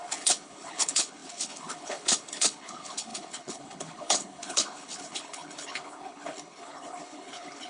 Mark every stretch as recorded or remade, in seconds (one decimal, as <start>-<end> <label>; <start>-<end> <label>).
0.0-7.7 remade